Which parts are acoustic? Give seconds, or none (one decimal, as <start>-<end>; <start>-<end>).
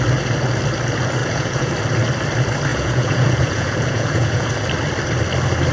0.0-1.2; 1.7-2.7; 4.5-5.7